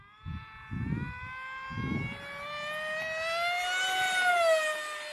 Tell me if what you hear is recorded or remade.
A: recorded